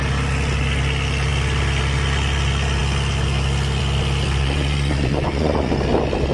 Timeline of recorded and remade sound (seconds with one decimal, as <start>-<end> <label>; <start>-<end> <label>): 0.0-4.4 recorded; 4.4-5.7 remade; 5.7-6.3 recorded